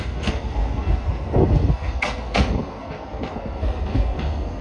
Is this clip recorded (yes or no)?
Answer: no